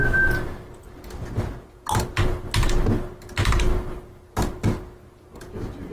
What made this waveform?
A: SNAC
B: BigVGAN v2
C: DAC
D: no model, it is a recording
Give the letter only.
D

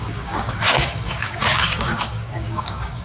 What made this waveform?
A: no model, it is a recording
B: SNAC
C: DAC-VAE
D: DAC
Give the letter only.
D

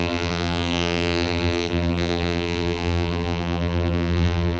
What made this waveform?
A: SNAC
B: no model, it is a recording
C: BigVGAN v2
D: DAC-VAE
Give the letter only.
C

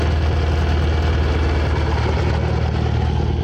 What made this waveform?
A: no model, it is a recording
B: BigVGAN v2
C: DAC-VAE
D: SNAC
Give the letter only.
A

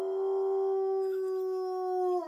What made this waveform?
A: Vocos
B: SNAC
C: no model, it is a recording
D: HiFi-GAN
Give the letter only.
C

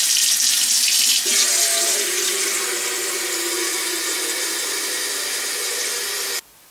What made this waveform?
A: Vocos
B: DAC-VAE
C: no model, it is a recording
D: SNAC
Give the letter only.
C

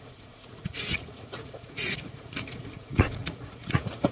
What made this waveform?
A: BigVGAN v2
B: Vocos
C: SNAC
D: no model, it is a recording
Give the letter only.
B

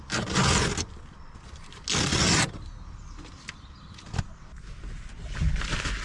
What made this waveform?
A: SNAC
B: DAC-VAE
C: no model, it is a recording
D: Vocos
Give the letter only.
C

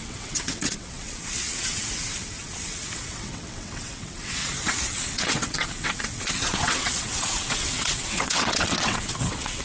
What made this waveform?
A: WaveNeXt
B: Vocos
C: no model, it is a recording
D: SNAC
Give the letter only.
A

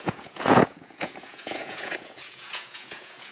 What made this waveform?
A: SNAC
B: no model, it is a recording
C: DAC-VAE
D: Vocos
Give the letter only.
D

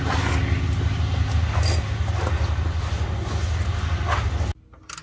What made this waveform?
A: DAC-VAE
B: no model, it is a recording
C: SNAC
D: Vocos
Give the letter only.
B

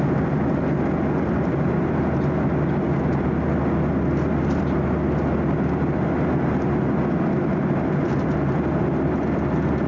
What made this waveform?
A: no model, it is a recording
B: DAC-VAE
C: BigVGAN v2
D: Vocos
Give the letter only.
A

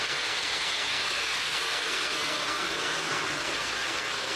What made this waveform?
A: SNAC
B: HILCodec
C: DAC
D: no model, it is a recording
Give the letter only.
A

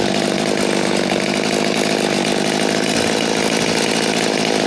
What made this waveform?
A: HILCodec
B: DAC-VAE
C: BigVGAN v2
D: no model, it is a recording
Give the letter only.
D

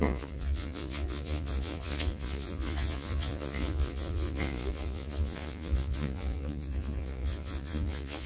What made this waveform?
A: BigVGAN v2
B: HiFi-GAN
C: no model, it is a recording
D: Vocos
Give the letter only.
D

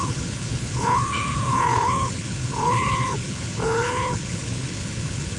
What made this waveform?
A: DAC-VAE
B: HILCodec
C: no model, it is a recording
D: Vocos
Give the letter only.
B